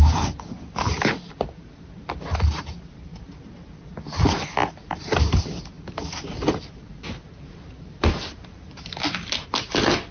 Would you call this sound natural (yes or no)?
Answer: yes